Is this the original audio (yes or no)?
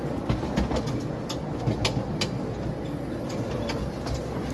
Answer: yes